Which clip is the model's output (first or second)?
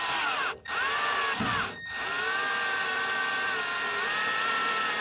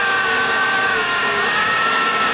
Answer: second